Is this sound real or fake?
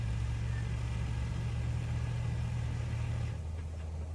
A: real